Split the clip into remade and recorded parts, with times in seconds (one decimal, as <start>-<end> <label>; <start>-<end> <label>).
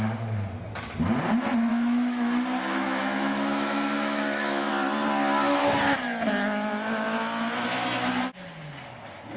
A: 0.0-1.7 recorded; 1.7-4.7 remade; 4.7-9.4 recorded